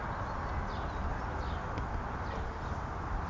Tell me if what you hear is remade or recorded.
recorded